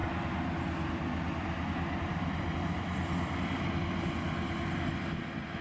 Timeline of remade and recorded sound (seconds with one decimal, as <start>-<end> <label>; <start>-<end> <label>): 0.0-5.6 recorded